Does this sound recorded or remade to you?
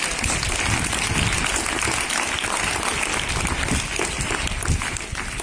recorded